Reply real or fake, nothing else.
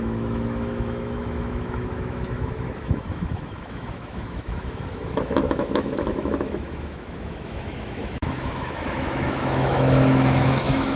fake